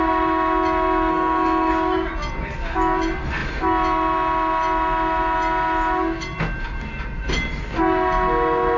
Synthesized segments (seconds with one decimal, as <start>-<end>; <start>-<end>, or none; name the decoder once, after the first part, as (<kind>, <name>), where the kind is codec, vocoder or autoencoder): 1.1-1.7 (codec, SNAC)